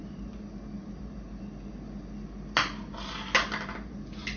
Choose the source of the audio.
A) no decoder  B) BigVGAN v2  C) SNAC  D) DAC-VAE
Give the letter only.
A